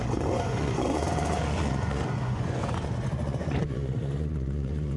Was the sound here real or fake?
fake